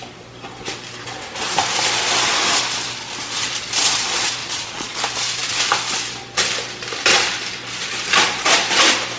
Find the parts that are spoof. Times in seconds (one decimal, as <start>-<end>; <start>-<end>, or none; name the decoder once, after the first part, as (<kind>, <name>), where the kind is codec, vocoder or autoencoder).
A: 4.4-5.0 (vocoder, Vocos)